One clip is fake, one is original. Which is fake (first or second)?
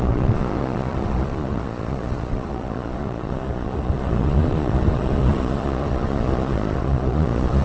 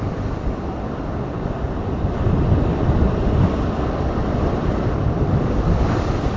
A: first